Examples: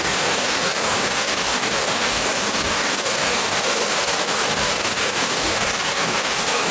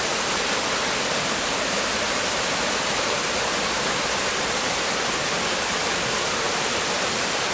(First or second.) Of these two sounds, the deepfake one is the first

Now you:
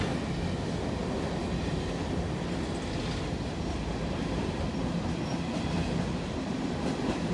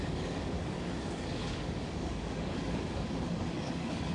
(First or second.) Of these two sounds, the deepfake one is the second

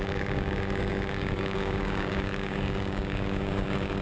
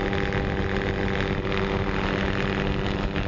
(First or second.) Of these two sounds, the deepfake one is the first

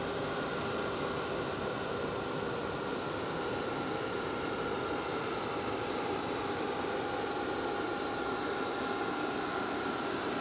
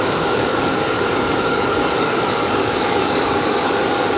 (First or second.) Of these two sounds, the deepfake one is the second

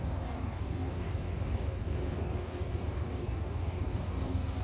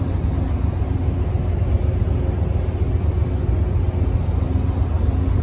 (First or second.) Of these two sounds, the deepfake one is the first